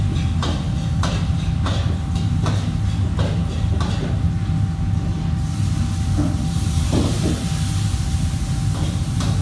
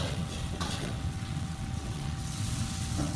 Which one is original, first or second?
first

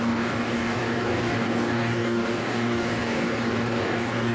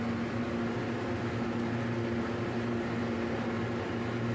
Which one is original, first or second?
second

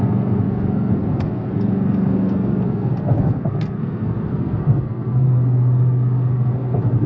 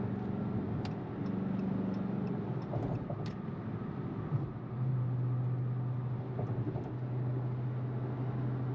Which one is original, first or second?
second